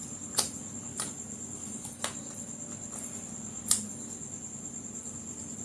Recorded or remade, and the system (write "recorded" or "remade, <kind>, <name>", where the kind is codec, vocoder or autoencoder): recorded